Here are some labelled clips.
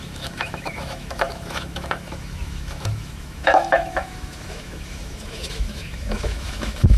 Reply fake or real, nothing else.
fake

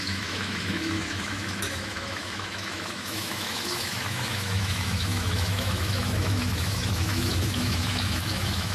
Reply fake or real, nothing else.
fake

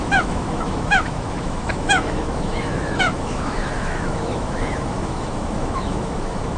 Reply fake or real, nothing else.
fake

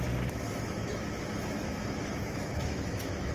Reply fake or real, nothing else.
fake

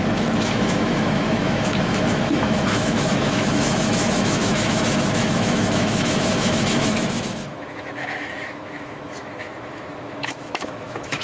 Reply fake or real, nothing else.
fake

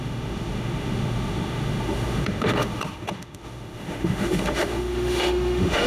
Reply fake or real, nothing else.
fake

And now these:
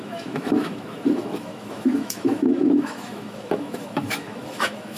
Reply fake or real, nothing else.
fake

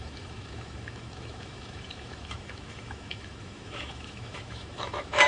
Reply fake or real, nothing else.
fake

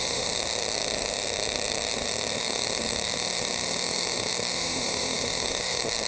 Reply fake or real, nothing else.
fake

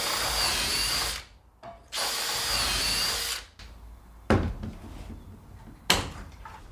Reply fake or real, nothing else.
real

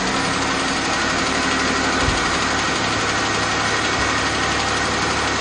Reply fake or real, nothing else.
real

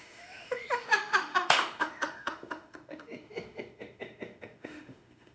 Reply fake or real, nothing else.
fake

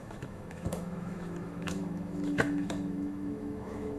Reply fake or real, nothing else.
fake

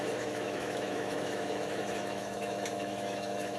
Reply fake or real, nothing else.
fake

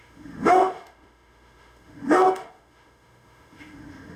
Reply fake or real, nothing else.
fake